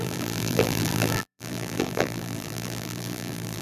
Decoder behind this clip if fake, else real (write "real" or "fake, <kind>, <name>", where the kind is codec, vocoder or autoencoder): fake, vocoder, BigVGAN v2